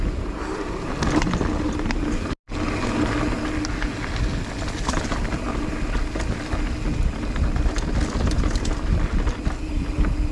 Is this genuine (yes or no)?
yes